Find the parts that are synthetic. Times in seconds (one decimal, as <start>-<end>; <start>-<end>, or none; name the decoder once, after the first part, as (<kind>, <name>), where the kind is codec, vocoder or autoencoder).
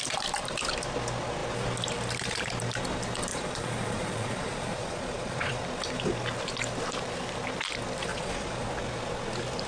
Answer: 3.3-5.6 (vocoder, Vocos); 8.1-8.7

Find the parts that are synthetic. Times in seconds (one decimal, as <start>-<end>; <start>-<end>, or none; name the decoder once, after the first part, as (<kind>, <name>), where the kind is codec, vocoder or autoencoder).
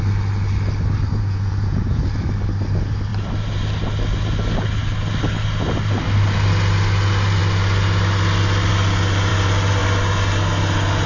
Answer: 1.1-2.0 (vocoder, Vocos)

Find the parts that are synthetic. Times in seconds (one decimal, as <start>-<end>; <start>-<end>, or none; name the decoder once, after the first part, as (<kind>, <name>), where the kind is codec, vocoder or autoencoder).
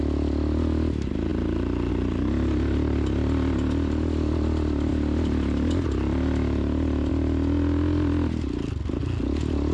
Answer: none